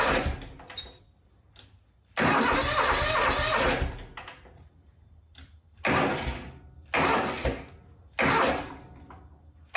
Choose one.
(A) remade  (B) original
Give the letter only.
B